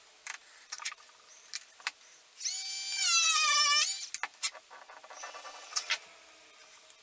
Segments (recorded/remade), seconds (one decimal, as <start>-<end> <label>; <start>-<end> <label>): 0.0-5.2 recorded; 5.2-5.9 remade; 5.9-7.0 recorded

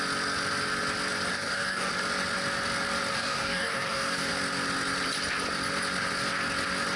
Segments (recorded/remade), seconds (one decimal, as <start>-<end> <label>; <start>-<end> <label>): 0.0-1.3 recorded; 1.3-1.9 remade; 1.9-3.1 recorded; 3.1-4.3 remade; 4.3-7.0 recorded

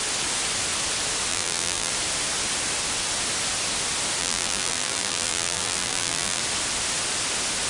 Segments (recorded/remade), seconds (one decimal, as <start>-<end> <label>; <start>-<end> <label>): 0.0-1.3 recorded; 1.3-1.9 remade; 1.9-4.2 recorded; 4.2-6.4 remade; 6.4-7.7 recorded

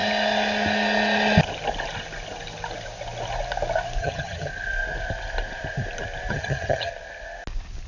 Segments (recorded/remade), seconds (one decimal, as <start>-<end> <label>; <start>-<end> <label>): 0.0-4.0 recorded; 4.0-4.5 remade; 4.5-6.3 recorded; 6.3-6.9 remade; 6.9-7.9 recorded

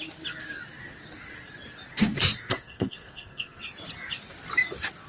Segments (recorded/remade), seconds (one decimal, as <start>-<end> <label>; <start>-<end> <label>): 0.0-2.4 recorded; 2.4-3.6 remade; 3.6-5.1 recorded

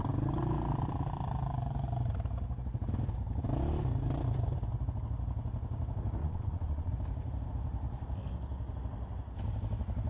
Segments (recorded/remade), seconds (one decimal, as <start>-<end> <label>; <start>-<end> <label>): 0.0-6.2 recorded; 6.2-6.9 remade; 6.9-10.1 recorded

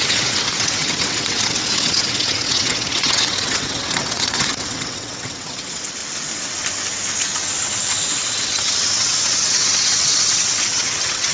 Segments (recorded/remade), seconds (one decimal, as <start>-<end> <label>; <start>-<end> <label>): 0.0-6.0 remade; 6.0-7.5 recorded; 7.5-11.3 remade